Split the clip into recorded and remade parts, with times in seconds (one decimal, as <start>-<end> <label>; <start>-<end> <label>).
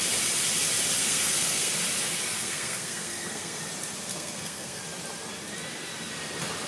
0.0-1.0 recorded; 1.0-1.7 remade; 1.7-2.4 recorded; 2.4-3.6 remade; 3.6-4.1 recorded; 4.1-4.8 remade; 4.8-6.7 recorded